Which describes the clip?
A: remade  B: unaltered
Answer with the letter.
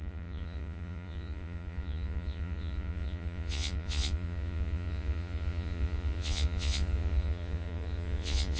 A